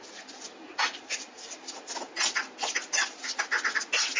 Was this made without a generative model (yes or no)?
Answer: yes